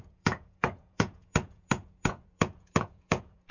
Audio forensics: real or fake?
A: fake